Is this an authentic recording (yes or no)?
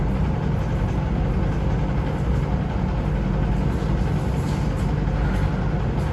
yes